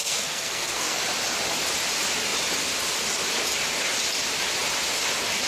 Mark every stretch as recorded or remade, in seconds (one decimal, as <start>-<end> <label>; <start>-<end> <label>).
0.0-1.0 remade; 1.0-5.5 recorded